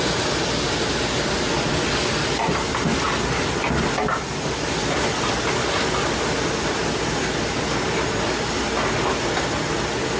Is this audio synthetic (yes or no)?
no